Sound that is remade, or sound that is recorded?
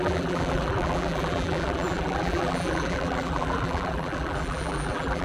remade